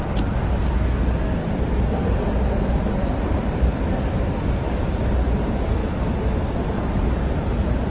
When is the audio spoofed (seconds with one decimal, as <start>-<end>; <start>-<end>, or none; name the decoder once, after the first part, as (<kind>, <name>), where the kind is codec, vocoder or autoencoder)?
1.4-4.4 (vocoder, BigVGAN v2); 5.8-6.7